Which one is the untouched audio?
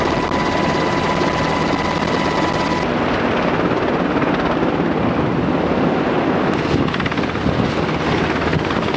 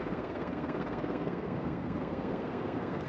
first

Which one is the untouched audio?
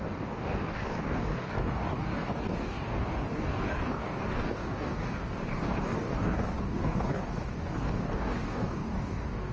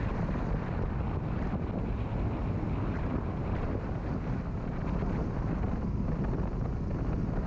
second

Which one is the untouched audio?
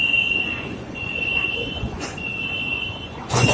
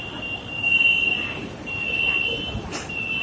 second